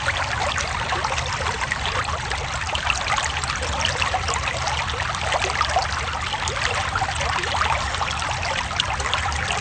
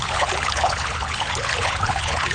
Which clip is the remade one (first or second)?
second